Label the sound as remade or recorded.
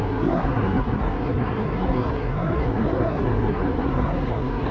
remade